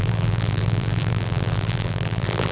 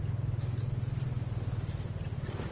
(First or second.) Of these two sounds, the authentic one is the second